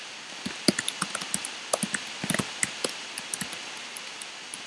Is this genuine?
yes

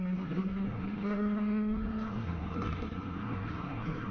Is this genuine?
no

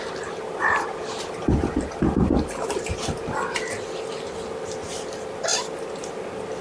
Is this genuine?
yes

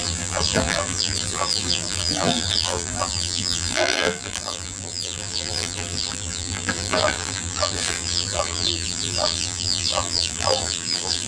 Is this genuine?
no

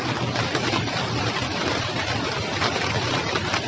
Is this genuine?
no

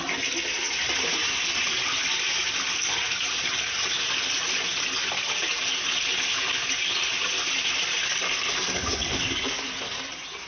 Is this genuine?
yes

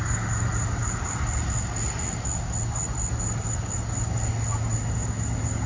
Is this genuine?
yes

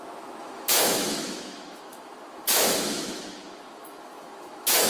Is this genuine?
no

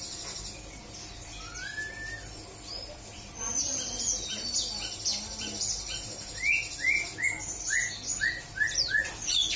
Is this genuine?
yes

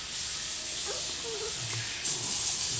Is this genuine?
yes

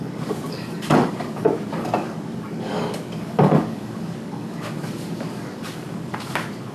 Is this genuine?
no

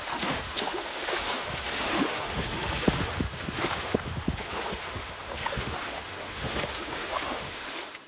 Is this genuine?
no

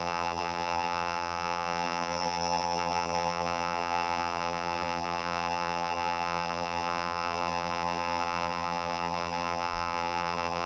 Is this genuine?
no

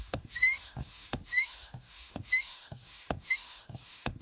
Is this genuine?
no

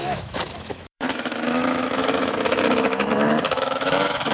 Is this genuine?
no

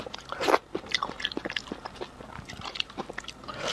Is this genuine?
yes